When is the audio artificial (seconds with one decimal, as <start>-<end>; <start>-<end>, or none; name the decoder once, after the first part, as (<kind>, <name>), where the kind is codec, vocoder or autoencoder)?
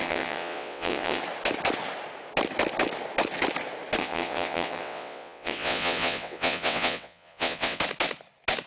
0.0-1.2 (vocoder, WaveNeXt); 4.0-7.8